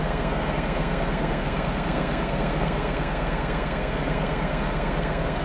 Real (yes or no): no